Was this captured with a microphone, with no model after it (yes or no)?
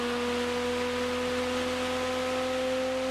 yes